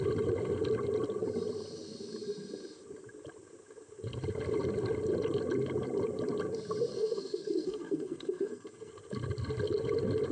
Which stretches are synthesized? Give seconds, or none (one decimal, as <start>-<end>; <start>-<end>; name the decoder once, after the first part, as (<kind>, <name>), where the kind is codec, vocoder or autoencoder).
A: 6.9-8.9 (codec, SNAC)